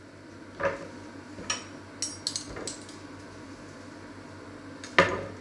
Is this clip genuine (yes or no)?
yes